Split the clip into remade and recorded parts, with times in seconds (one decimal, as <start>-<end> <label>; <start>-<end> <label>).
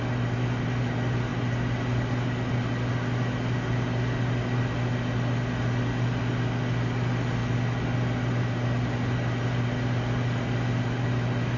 0.0-11.6 recorded